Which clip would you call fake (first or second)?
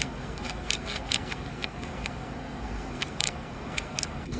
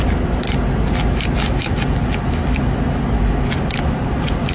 first